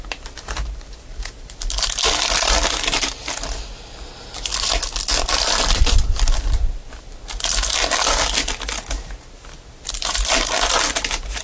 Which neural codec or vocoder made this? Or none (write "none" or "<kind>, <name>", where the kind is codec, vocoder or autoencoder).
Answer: none